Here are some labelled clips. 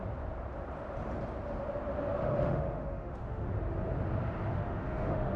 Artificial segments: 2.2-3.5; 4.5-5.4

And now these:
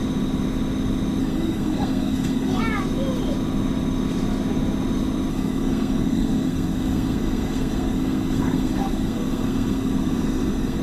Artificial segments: 1.2-2.6; 5.3-10.8

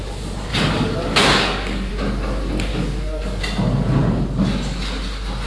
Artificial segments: 0.5-1.9; 2.7-3.4

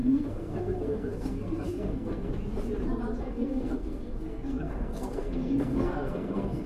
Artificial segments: 0.0-2.3; 3.2-6.7

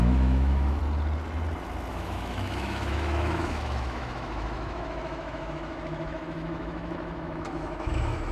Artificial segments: 0.0-0.8; 1.9-8.3